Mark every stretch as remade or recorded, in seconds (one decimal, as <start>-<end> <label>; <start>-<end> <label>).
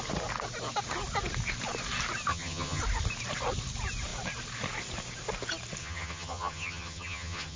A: 0.0-2.3 recorded; 2.3-2.8 remade; 2.8-5.8 recorded; 5.8-7.6 remade